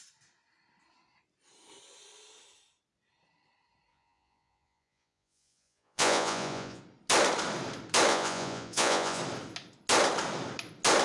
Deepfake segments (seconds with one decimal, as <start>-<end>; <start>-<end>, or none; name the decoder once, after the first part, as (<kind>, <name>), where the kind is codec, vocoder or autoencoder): 3.9-6.8 (vocoder, Vocos); 8.1-9.2